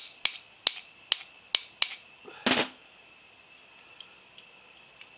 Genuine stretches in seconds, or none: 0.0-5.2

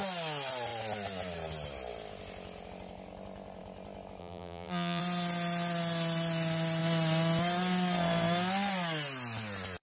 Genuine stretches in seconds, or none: 0.0-4.2; 5.0-9.8